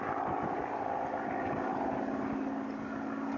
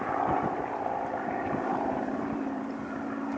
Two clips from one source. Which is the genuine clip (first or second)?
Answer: first